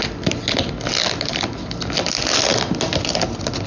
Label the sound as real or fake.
real